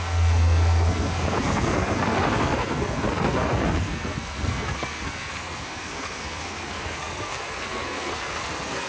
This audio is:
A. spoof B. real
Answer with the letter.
A